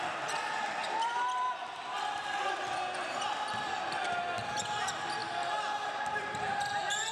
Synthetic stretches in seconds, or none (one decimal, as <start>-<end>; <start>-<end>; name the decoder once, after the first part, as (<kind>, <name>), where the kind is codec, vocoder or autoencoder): 0.8-4.6 (vocoder, BigVGAN v2); 5.2-6.4